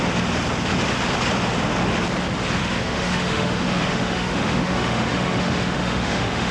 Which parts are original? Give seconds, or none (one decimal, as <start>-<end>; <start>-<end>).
0.0-2.6